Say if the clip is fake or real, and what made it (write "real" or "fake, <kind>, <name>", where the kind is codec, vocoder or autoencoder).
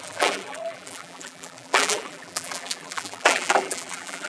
fake, vocoder, BigVGAN v2